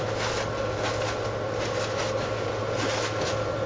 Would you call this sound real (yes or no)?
yes